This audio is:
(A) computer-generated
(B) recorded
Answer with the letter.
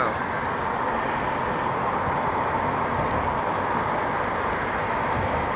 B